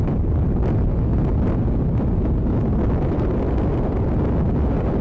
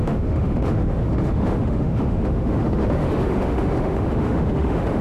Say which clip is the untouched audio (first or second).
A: first